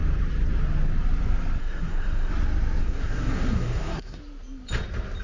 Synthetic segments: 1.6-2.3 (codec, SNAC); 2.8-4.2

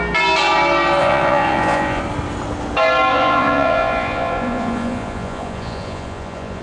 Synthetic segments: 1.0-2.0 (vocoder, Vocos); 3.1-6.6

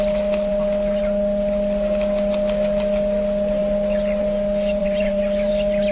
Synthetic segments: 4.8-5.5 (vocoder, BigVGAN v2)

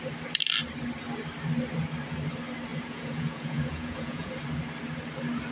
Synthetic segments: 2.7-4.3 (vocoder, Vocos)